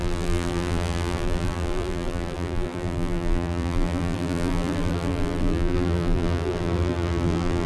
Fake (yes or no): yes